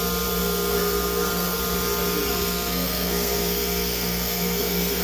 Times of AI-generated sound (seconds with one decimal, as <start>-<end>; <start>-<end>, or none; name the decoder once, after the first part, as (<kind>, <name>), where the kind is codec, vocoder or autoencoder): 0.4-1.6 (codec, SNAC); 2.3-5.0

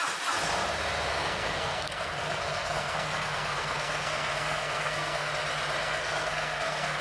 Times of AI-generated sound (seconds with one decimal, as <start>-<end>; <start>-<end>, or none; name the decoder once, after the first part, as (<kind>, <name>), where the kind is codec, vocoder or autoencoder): 1.1-5.3 (codec, SNAC); 5.8-7.0